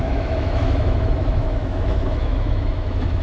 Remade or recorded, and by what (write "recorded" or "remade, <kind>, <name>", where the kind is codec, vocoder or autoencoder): remade, autoencoder, DAC-VAE